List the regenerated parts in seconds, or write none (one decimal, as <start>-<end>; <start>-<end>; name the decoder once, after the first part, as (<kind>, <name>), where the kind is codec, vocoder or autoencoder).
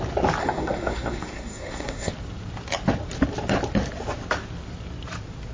0.4-2.1 (codec, SNAC)